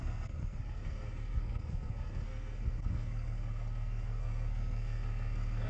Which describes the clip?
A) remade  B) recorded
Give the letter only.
A